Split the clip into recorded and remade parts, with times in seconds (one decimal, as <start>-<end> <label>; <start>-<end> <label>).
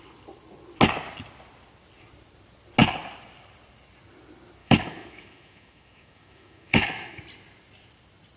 0.0-4.6 recorded; 4.6-7.2 remade; 7.2-8.4 recorded